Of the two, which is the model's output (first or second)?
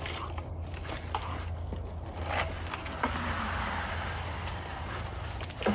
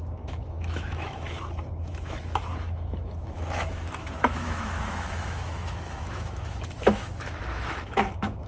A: second